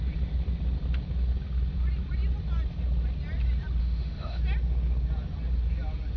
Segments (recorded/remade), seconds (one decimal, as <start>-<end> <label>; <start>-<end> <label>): 0.0-3.8 recorded; 3.8-4.4 remade; 4.4-6.2 recorded